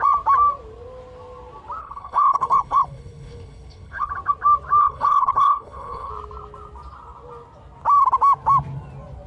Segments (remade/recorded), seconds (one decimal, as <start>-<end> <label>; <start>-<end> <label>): 0.0-1.8 recorded; 1.8-4.1 remade; 4.1-4.8 recorded; 4.8-6.1 remade; 6.1-9.3 recorded